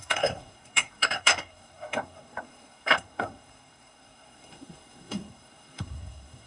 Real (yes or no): no